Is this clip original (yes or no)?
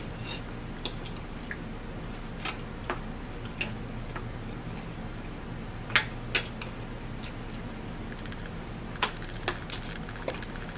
yes